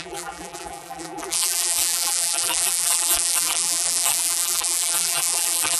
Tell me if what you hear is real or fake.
fake